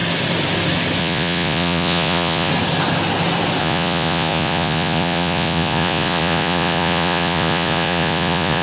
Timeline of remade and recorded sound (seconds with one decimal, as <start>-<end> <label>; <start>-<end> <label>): 0.0-1.0 recorded; 1.0-2.5 remade; 2.5-3.6 recorded; 3.6-8.6 remade